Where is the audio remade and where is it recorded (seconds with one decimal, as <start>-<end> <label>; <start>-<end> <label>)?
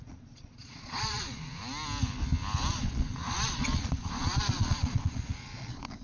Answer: 0.0-1.6 remade; 1.6-2.7 recorded; 2.7-6.0 remade